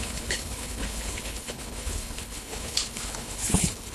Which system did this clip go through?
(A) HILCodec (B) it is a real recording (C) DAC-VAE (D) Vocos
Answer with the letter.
A